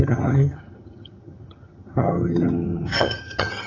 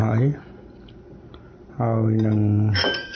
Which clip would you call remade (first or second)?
first